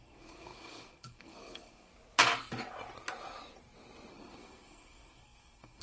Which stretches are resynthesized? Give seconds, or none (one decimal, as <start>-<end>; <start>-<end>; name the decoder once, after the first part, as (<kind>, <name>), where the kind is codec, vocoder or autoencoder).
0.0-1.9 (codec, SNAC); 4.1-5.8